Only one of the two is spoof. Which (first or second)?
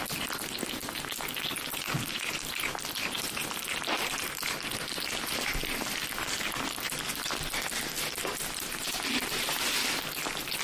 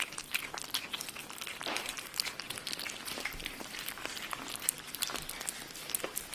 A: second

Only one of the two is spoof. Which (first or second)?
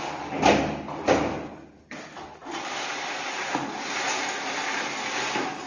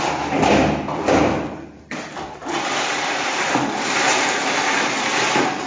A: second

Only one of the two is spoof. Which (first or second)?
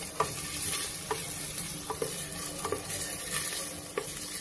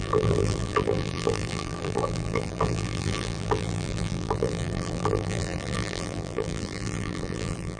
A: second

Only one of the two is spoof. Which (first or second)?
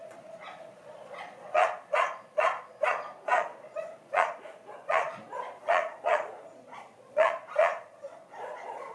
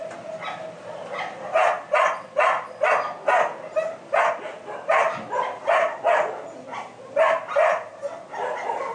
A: first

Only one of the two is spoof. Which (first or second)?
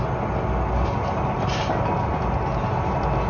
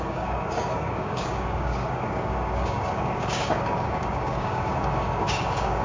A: second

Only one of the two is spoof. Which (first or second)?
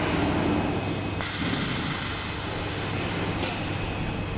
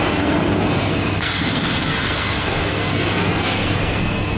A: second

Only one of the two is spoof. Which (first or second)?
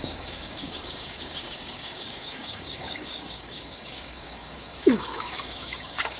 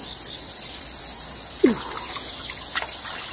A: first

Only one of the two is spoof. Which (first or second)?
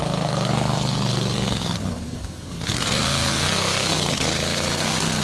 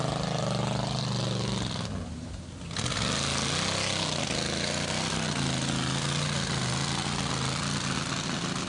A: first